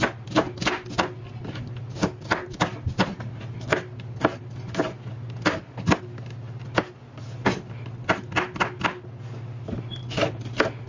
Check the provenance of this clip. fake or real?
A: real